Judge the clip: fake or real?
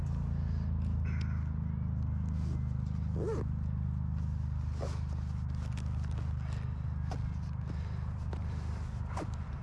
real